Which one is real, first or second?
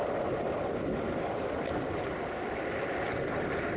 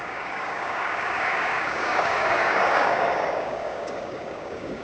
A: first